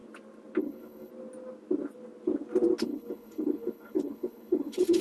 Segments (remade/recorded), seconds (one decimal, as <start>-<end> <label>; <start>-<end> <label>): 0.0-0.6 recorded; 0.6-1.1 remade; 1.1-2.8 recorded; 2.8-5.0 remade